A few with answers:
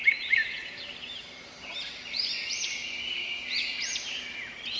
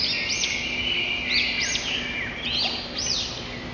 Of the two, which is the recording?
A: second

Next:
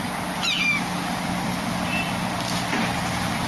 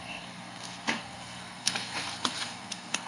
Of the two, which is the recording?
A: first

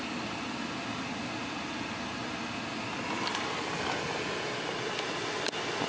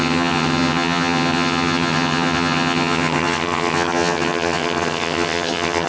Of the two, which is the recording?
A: first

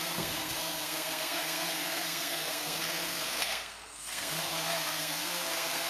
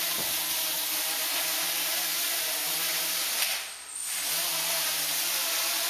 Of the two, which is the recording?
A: second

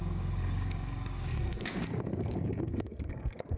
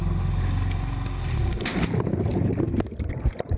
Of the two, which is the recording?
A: second